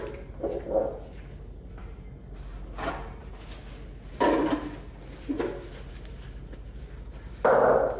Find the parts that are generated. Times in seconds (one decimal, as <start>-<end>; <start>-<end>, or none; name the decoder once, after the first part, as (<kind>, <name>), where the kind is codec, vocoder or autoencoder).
none